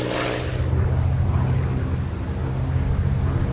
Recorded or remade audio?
recorded